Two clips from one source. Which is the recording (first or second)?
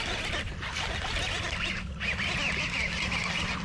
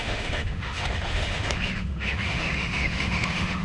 first